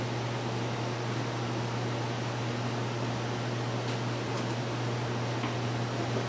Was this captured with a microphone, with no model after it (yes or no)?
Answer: yes